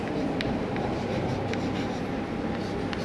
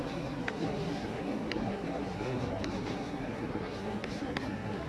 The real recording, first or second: first